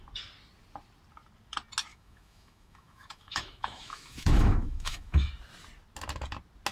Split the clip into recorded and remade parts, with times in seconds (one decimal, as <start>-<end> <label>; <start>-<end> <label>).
0.0-1.9 recorded; 1.9-5.3 remade; 5.3-6.7 recorded